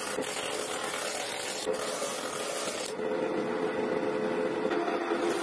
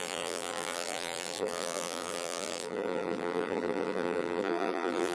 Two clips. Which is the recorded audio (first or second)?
first